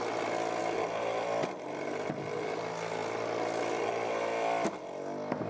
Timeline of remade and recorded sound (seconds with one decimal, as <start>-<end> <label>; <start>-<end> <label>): 0.0-5.5 recorded